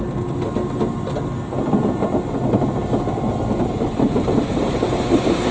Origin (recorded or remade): recorded